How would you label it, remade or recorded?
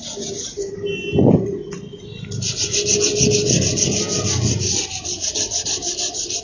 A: recorded